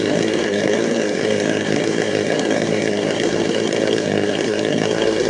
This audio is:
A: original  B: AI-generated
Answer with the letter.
B